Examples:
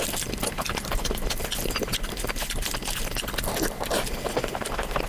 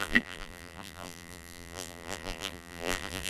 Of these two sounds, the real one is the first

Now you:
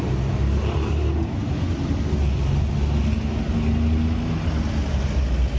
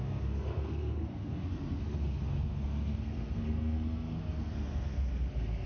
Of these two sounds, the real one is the first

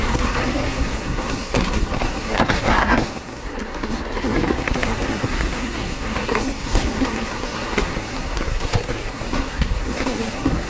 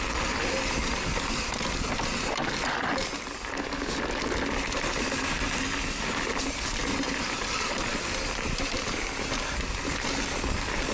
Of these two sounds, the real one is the second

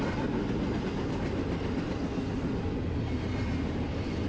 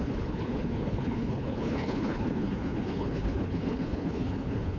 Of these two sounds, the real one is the first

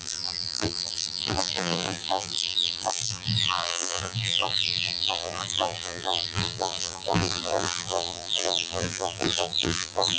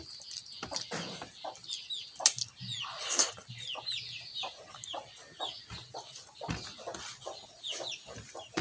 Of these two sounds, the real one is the second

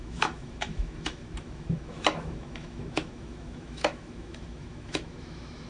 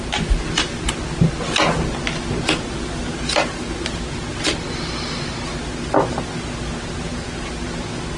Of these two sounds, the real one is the second